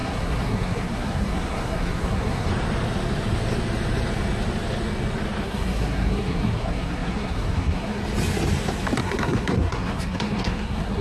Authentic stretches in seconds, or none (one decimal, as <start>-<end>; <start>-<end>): 2.5-5.4; 8.0-9.0